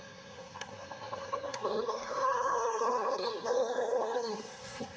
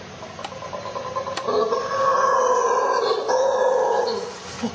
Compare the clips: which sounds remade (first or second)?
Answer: first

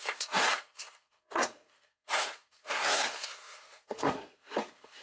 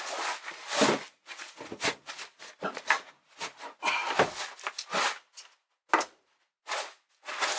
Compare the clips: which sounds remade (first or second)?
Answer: first